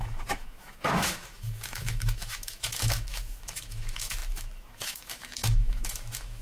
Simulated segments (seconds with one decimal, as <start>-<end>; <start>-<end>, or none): 0.0-6.4